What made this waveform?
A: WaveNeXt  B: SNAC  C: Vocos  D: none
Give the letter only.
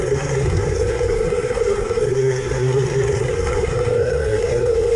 B